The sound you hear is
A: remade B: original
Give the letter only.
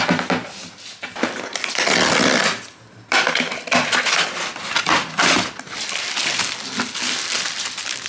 B